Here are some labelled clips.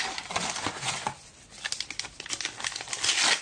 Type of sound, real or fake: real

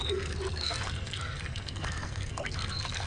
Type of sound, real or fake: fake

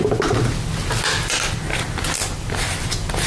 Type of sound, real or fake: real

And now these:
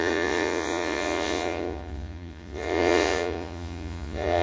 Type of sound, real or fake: fake